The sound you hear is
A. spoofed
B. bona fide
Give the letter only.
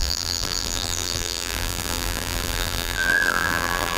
A